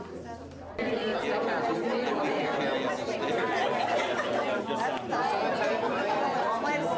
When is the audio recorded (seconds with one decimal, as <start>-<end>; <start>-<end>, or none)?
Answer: 0.0-7.0